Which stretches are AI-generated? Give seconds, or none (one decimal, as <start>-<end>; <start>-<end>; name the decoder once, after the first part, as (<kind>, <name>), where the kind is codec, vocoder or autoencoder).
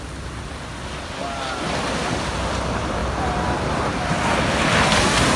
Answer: none